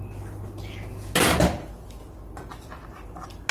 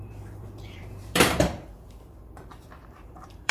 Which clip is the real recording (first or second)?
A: first